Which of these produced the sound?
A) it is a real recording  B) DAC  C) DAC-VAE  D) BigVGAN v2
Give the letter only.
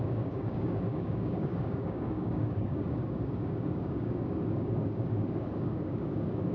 B